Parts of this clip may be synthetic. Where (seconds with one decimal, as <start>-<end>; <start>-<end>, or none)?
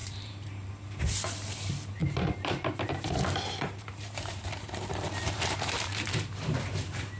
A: 0.0-0.7; 2.0-6.3